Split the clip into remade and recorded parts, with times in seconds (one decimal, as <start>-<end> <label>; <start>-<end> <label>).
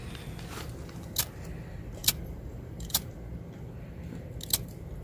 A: 0.0-2.0 recorded; 2.0-3.1 remade; 3.1-5.0 recorded